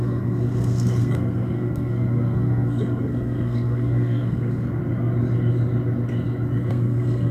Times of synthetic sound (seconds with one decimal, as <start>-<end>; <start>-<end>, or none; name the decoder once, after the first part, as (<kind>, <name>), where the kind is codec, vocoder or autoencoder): 0.0-4.8 (codec, SNAC); 6.7-7.3